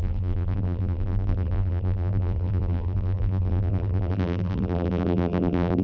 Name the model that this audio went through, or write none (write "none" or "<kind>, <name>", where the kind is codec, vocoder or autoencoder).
vocoder, BigVGAN v2